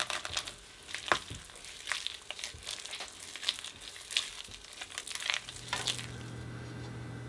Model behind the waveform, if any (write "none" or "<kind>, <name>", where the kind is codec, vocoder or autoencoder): none